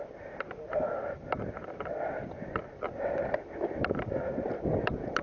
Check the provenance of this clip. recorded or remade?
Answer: recorded